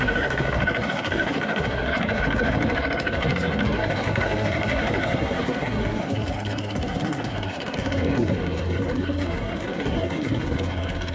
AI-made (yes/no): yes